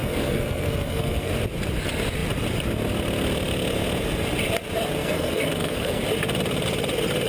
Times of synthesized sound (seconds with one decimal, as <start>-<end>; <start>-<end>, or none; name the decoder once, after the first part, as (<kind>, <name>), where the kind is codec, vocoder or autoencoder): 0.0-1.3 (codec, SNAC); 5.0-6.0